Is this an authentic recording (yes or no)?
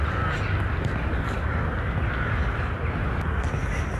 yes